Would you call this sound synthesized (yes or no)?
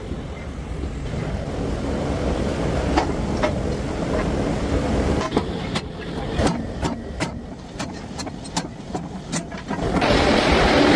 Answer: yes